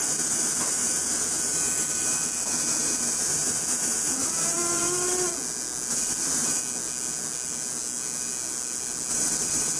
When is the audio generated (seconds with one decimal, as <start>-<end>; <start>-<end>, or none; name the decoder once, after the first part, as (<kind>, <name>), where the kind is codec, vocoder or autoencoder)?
0.0-5.3 (vocoder, BigVGAN v2); 5.9-6.6; 9.1-9.8